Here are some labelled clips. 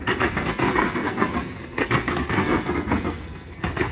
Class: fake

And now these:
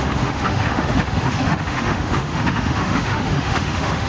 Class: fake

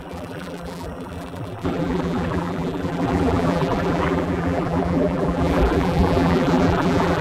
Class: fake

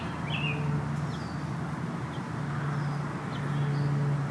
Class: real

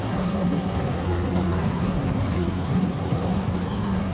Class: fake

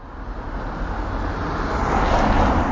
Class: real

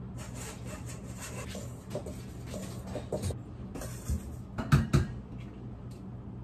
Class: real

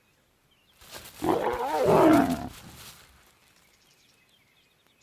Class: real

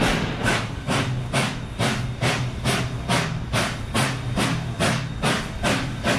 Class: real